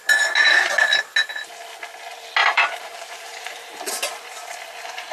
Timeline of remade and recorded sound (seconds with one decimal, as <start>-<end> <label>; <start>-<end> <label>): 0.0-2.4 recorded; 2.4-3.9 remade; 3.9-5.1 recorded